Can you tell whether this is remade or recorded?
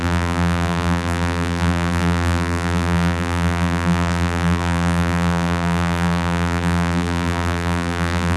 remade